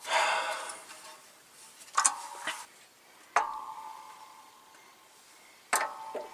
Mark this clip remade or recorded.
recorded